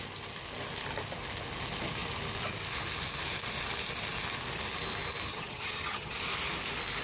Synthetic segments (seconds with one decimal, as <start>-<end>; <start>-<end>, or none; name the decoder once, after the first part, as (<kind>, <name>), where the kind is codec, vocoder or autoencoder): 5.3-6.1 (vocoder, HiFi-GAN)